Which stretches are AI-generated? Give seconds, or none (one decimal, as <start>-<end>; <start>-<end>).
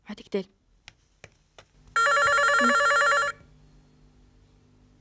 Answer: none